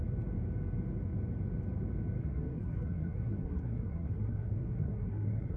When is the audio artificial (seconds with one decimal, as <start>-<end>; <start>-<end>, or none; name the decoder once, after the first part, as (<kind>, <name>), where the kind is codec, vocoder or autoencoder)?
2.2-5.6 (codec, SNAC)

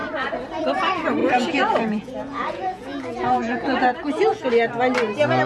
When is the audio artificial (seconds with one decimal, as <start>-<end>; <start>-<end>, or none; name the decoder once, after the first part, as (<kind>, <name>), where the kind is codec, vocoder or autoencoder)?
1.2-4.5 (vocoder, Vocos)

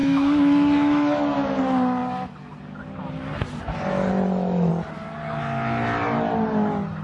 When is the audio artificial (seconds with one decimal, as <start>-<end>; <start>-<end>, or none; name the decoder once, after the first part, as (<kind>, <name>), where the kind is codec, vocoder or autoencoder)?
0.0-1.6 (autoencoder, DAC-VAE); 4.1-4.7

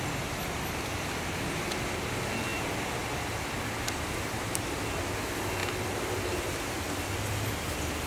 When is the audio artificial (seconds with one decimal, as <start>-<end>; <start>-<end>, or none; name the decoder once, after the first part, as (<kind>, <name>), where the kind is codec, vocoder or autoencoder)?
none

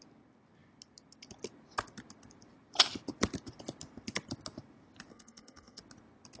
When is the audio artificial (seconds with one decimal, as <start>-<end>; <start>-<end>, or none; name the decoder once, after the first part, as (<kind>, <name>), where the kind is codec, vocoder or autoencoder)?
5.1-5.8 (codec, SNAC)

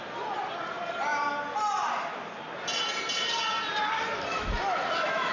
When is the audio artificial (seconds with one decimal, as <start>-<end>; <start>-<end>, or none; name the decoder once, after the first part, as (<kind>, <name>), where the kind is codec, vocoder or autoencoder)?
4.3-5.3 (autoencoder, DAC-VAE)

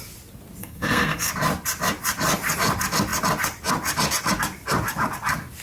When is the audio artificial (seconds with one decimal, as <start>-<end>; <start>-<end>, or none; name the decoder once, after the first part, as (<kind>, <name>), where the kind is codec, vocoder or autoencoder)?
0.6-1.3 (codec, SNAC)